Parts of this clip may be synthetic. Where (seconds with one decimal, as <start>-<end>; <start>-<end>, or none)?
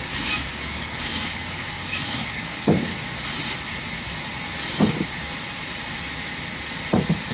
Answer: 0.0-2.9